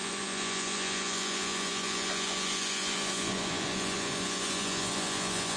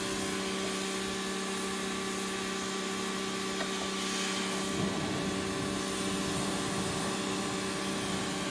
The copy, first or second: first